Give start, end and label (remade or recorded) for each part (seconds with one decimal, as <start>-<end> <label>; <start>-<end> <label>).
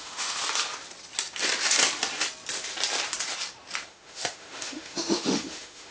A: 0.0-0.4 remade; 0.4-3.9 recorded; 3.9-5.9 remade